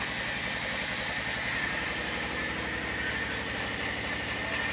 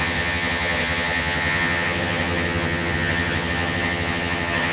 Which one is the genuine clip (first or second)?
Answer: first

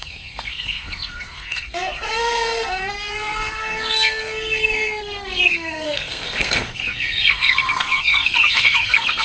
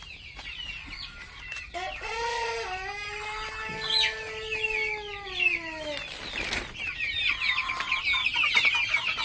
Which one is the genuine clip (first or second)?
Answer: second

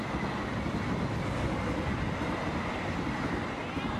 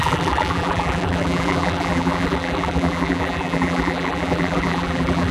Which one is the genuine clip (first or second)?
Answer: first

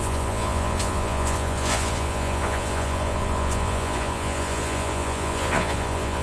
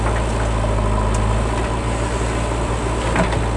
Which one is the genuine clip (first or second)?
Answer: second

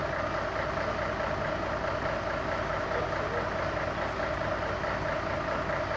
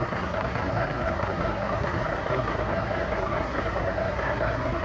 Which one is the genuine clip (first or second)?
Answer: first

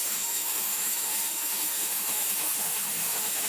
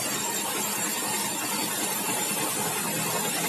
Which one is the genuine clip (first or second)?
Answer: second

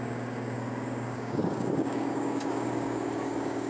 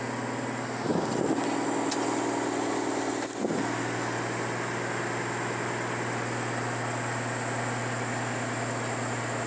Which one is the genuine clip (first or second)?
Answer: second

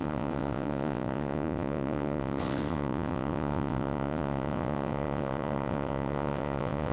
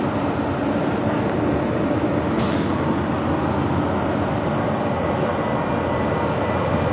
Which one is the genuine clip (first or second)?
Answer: second